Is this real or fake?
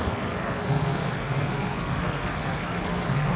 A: fake